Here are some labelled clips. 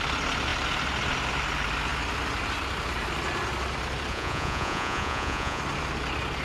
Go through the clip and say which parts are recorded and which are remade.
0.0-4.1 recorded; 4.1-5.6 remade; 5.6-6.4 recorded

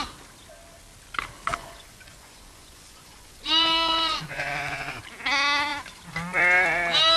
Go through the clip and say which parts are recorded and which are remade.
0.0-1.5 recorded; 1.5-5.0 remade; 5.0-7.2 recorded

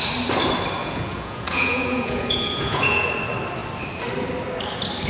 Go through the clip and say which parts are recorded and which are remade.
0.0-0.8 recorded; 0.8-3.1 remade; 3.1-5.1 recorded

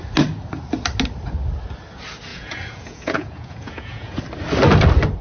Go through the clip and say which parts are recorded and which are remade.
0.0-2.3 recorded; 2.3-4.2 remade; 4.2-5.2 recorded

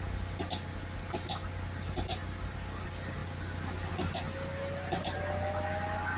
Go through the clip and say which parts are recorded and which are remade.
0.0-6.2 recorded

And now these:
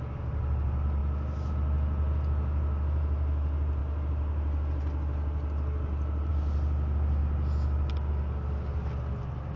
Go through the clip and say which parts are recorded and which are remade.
0.0-9.6 recorded